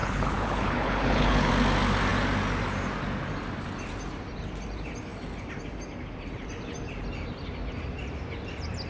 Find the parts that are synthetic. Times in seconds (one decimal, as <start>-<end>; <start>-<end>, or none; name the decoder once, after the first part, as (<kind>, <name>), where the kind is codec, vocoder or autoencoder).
0.0-1.5 (codec, HILCodec)